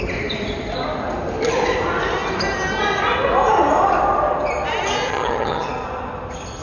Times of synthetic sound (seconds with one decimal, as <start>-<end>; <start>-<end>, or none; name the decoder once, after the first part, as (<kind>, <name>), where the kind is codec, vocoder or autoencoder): 5.1-5.7 (vocoder, HiFi-GAN)